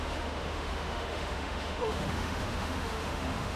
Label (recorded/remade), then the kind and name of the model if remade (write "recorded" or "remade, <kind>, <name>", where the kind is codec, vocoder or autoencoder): remade, autoencoder, DAC-VAE